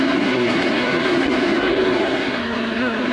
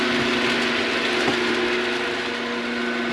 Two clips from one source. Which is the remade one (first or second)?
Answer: first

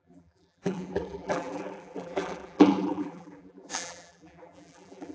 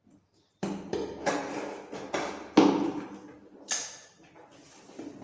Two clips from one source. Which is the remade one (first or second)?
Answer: first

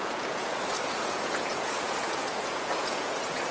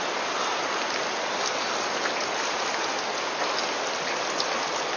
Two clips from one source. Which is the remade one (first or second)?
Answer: first